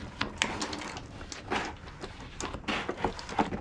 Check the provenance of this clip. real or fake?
real